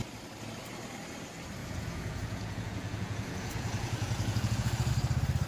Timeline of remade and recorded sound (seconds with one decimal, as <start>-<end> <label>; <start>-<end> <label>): 0.0-1.6 recorded; 1.6-4.9 remade; 4.9-5.5 recorded